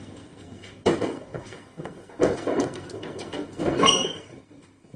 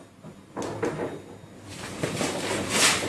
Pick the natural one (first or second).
second